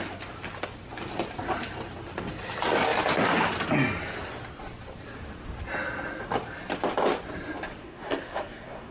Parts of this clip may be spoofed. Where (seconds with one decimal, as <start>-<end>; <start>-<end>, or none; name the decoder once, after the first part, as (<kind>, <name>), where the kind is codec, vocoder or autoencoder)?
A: 7.8-8.9 (codec, SNAC)